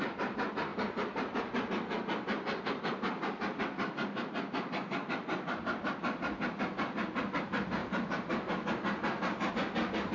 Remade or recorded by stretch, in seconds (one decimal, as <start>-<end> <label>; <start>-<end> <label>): 0.0-10.1 recorded